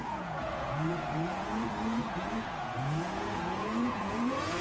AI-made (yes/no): yes